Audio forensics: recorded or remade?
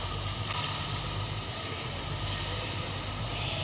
recorded